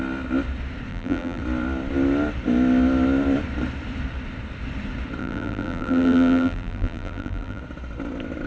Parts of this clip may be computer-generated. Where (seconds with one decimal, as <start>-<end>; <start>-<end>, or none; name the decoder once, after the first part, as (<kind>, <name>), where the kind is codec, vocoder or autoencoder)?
0.9-1.4 (vocoder, BigVGAN v2); 5.2-7.6